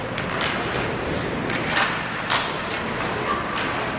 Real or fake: real